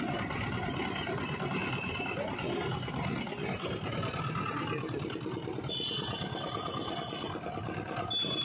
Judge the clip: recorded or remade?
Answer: recorded